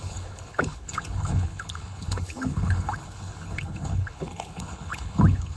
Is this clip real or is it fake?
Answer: fake